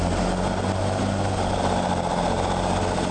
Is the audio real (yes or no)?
yes